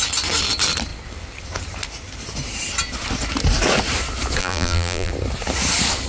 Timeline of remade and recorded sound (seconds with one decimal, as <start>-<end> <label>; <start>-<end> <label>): 0.0-4.4 recorded; 4.4-5.1 remade; 5.1-6.1 recorded